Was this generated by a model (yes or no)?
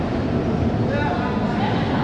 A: no